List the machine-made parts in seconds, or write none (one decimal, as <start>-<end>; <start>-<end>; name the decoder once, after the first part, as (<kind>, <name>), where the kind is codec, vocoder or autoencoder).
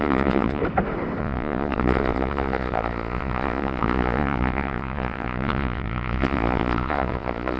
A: 0.0-0.6 (vocoder, Vocos); 1.2-7.6